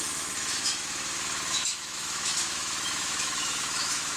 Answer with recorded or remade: remade